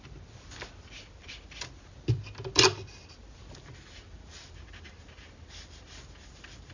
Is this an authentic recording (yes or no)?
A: yes